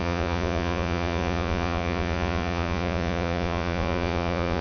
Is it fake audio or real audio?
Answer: fake